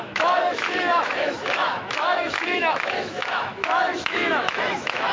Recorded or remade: remade